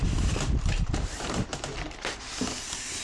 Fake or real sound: real